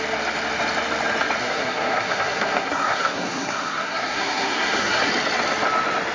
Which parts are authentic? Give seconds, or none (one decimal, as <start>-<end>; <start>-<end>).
0.0-1.4; 5.1-6.1

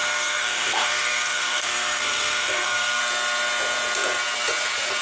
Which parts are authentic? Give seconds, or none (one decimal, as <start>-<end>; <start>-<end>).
3.0-5.0

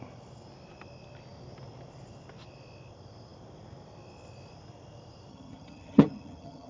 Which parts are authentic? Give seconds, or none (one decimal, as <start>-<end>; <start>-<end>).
0.0-5.3

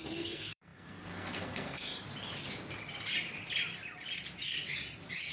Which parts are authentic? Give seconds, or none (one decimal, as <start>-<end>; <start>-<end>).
1.9-5.3